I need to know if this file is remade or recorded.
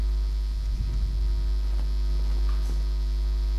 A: recorded